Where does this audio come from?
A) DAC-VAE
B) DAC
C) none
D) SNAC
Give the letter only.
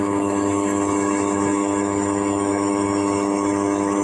A